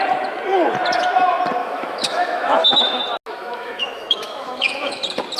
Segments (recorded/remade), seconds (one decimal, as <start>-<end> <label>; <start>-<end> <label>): 0.0-1.6 recorded; 1.6-3.0 remade; 3.0-3.4 recorded; 3.4-5.0 remade; 5.0-5.4 recorded